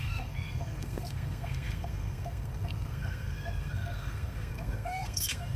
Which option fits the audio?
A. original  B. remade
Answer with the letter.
B